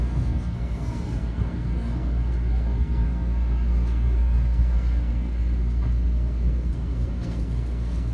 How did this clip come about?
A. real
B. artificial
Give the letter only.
B